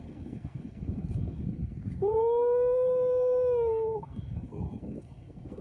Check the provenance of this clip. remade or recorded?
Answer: remade